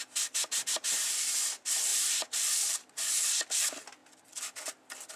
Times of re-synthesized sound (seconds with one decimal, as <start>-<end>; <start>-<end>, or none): 1.9-3.1